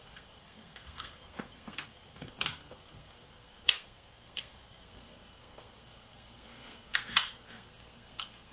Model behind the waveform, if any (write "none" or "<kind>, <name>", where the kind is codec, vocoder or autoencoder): codec, SNAC